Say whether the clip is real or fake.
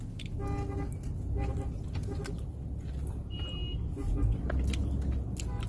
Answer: real